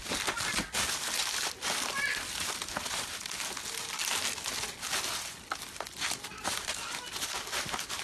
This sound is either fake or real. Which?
real